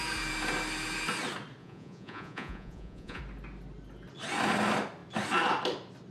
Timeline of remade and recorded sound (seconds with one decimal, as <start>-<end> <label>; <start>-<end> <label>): 0.0-1.6 recorded; 1.6-3.2 remade; 3.2-6.1 recorded